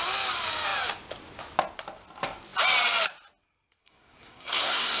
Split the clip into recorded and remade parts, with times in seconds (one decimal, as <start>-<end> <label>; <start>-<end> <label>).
0.0-3.8 recorded; 3.8-5.0 remade